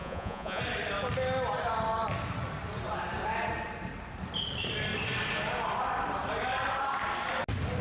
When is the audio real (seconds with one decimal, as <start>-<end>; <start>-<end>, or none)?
0.6-7.8